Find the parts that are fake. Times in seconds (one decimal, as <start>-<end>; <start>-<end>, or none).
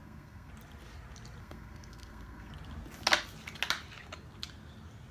0.0-0.5; 1.4-2.5